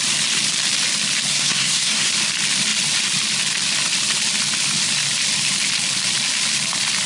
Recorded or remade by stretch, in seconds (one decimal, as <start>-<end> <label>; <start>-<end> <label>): 0.0-1.3 recorded; 1.3-2.1 remade; 2.1-7.1 recorded